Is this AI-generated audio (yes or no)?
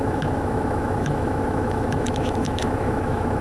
yes